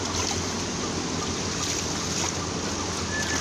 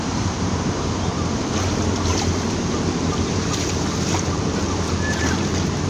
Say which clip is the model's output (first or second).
second